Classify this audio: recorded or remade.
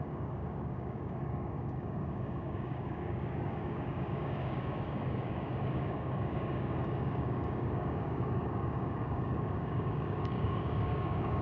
remade